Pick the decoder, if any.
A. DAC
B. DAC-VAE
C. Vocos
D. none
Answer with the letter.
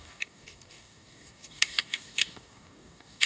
A